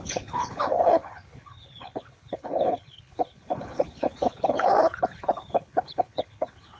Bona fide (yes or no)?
no